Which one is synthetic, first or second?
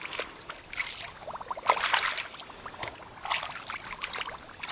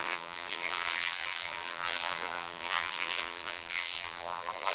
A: second